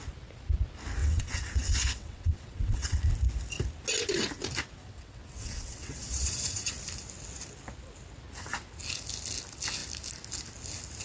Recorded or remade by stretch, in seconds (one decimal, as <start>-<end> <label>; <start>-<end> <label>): 0.0-1.0 recorded; 1.0-3.0 remade; 3.0-4.8 recorded; 4.8-6.7 remade; 6.7-11.0 recorded